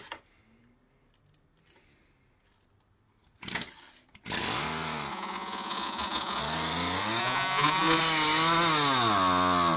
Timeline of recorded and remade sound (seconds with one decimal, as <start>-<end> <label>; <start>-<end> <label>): 0.0-5.1 recorded; 5.1-6.4 remade; 6.4-7.2 recorded; 7.2-8.0 remade; 8.0-9.8 recorded